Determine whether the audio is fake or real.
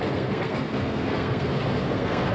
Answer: fake